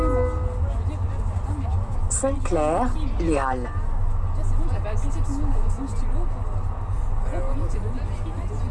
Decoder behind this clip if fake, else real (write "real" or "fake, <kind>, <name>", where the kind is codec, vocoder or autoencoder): real